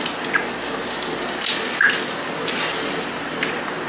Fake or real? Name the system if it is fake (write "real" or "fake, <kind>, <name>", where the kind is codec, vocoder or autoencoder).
real